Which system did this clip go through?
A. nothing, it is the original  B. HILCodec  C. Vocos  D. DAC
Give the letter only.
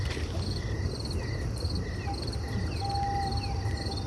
A